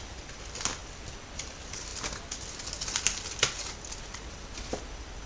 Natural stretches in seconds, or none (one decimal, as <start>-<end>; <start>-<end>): 0.0-5.3